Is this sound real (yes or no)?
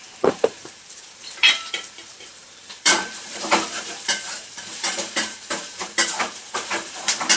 no